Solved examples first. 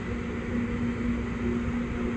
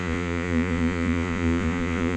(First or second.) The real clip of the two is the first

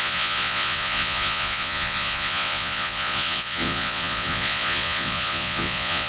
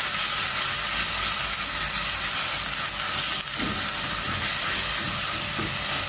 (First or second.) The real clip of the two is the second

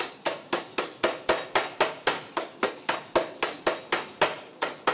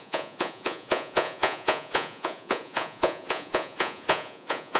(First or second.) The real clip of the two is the first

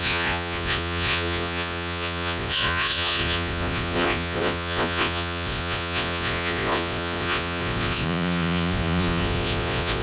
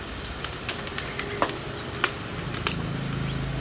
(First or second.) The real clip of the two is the second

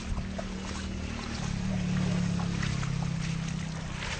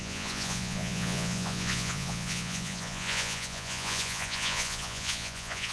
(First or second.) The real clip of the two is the first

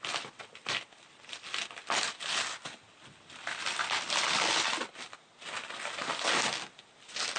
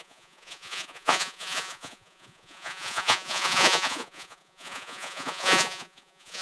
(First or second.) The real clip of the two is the first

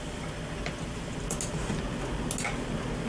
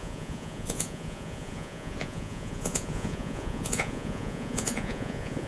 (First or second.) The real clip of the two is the first